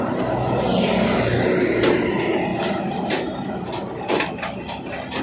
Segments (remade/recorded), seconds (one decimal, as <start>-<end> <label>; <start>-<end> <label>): 0.0-5.2 recorded

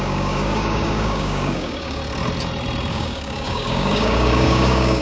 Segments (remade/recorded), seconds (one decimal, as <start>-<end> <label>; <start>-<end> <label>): 0.0-2.0 remade; 2.0-2.9 recorded; 2.9-5.0 remade